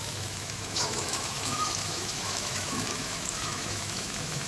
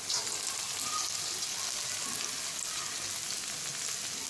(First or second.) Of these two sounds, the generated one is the first